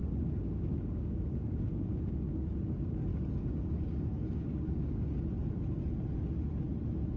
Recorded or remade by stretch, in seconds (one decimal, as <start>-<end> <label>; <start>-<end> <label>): 0.0-2.0 remade; 2.0-3.1 recorded; 3.1-5.1 remade; 5.1-7.2 recorded